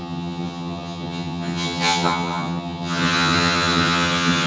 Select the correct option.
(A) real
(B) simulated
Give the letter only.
B